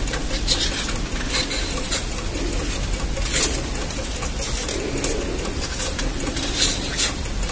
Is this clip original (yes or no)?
yes